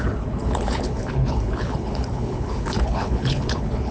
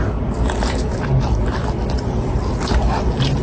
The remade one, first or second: first